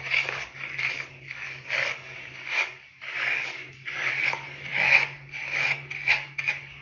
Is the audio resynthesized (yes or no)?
yes